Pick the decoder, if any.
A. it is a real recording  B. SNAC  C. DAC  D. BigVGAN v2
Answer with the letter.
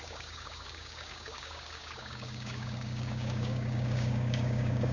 C